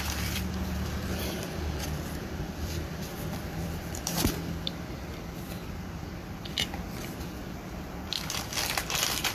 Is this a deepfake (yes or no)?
yes